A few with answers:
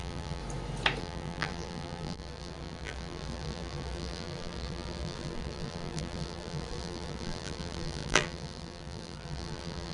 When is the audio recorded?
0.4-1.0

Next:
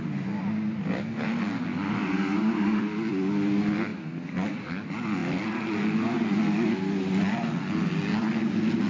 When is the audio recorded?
0.0-1.7; 2.8-8.9

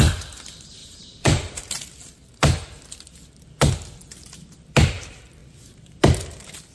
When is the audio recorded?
0.0-0.8; 1.7-6.7